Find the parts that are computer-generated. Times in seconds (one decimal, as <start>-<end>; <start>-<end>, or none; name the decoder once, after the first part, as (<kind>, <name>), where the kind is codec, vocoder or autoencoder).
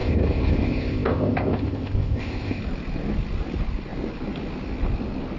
0.0-2.6 (codec, ZipCodec)